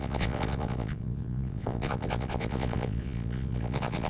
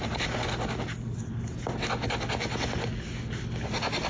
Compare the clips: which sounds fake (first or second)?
first